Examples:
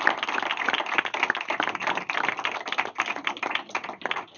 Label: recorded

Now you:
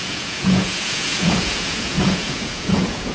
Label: remade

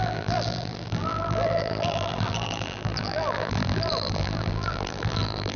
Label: remade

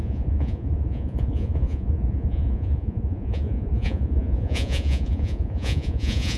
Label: remade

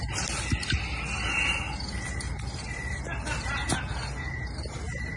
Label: recorded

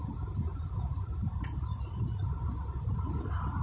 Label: recorded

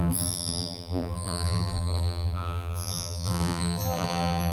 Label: remade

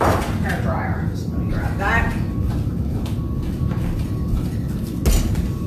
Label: recorded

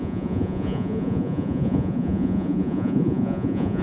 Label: remade